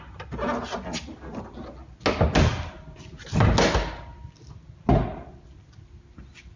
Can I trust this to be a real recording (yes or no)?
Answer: yes